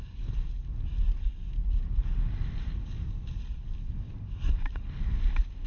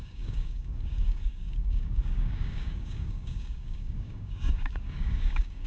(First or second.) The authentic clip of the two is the first